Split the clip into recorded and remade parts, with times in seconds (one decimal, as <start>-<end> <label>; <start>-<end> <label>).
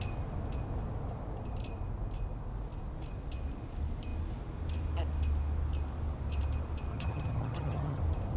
0.0-6.9 recorded; 6.9-8.0 remade; 8.0-8.4 recorded